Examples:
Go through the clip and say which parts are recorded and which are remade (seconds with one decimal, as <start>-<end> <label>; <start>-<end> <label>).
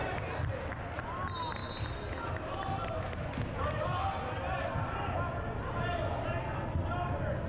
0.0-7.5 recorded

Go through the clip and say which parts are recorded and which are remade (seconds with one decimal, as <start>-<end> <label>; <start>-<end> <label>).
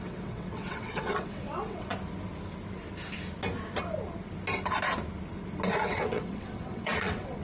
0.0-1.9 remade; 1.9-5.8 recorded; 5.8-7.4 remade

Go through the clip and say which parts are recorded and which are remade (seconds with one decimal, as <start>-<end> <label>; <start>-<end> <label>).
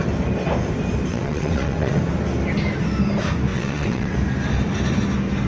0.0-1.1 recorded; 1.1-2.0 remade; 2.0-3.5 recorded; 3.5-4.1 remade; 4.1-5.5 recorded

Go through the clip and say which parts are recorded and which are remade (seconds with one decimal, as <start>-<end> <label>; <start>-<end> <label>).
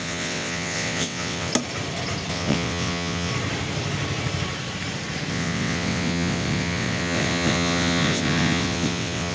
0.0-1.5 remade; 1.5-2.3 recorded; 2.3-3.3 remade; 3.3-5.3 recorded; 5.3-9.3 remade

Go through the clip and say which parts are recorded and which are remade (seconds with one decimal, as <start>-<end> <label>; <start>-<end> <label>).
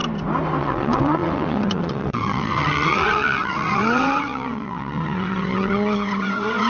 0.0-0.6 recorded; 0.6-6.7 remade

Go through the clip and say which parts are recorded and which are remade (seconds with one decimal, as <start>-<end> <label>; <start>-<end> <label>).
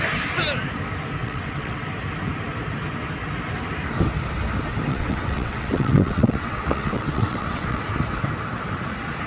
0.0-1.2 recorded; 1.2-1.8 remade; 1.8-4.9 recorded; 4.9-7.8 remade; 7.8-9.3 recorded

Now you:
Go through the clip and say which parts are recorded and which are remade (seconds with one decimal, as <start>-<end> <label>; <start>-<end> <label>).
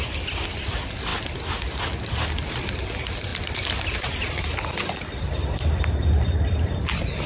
0.0-7.3 recorded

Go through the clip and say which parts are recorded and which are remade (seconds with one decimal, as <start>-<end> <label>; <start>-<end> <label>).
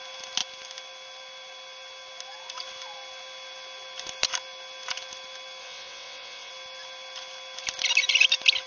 0.0-5.6 recorded; 5.6-6.5 remade; 6.5-8.7 recorded